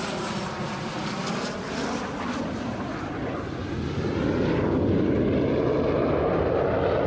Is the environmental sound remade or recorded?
recorded